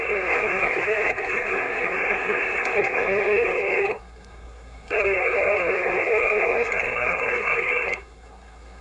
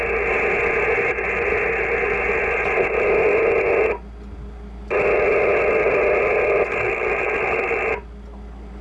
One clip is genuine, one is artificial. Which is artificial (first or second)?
first